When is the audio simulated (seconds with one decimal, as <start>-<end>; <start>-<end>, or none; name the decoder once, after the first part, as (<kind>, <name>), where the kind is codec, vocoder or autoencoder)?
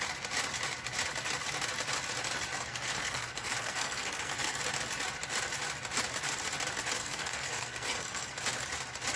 2.5-4.6 (codec, SNAC); 7.0-8.4